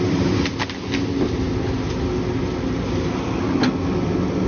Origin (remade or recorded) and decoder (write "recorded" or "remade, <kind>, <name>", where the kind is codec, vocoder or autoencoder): recorded